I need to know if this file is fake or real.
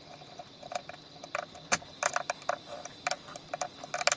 real